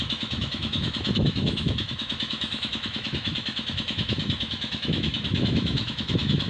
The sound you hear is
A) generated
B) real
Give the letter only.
A